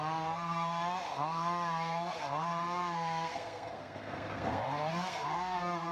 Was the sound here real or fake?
fake